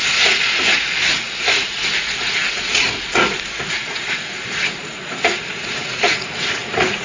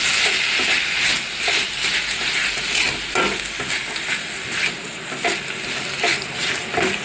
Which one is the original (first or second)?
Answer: second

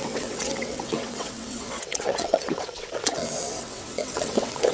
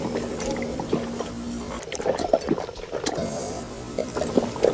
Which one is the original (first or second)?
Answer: second